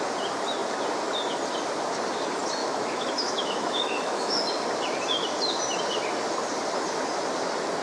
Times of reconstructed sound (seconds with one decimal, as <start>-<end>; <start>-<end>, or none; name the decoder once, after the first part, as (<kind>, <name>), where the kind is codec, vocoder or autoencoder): 2.6-4.5 (autoencoder, DAC-VAE)